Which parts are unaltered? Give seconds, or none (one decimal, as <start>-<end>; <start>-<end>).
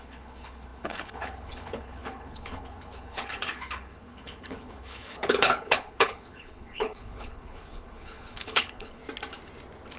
9.0-10.0